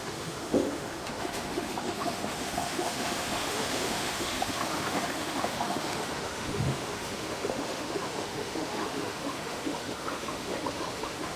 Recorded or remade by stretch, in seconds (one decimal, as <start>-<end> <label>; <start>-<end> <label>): 0.0-11.4 remade